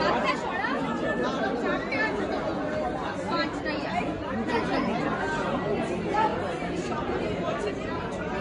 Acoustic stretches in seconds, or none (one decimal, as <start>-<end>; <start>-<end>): 0.0-8.4